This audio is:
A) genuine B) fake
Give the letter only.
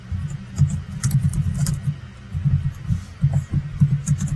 A